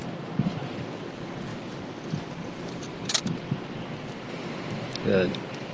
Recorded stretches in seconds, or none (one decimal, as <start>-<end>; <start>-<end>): 0.0-1.5; 2.7-5.7

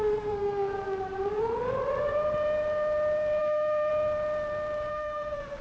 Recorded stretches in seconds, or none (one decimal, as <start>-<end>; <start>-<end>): 0.7-1.4; 1.8-3.4; 3.9-4.9

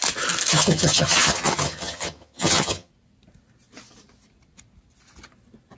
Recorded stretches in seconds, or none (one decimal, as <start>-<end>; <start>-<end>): 0.0-0.5; 2.9-5.8

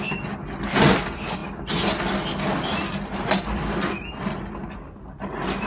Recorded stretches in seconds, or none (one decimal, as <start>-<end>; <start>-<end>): 0.0-5.7

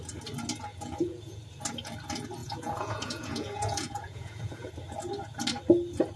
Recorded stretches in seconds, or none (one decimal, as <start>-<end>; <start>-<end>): 0.0-0.7; 1.4-2.4; 4.7-6.2

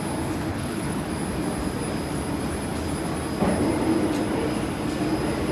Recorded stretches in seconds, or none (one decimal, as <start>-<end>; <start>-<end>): 0.0-0.5; 1.1-5.5

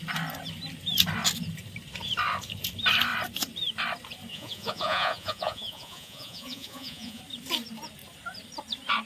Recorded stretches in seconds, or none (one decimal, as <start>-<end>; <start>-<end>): 0.0-4.3; 7.2-9.1